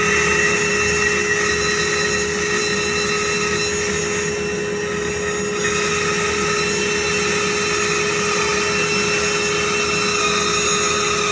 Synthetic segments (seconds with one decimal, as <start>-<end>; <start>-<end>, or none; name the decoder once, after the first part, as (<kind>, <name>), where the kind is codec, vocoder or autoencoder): none